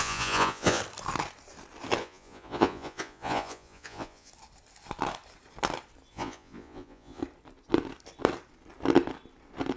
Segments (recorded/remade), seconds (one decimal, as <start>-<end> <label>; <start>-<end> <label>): 0.0-0.8 remade; 0.8-2.0 recorded; 2.0-4.3 remade; 4.3-6.1 recorded; 6.1-7.2 remade; 7.2-9.8 recorded